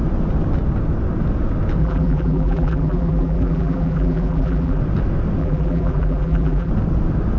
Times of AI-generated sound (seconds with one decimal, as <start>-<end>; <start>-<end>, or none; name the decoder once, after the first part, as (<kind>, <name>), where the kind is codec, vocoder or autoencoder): 1.8-4.8 (vocoder, BigVGAN v2); 5.4-6.7